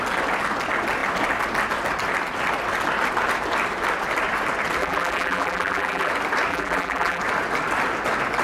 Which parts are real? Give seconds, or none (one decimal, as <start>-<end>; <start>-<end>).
0.0-4.8; 6.1-6.5; 7.2-8.4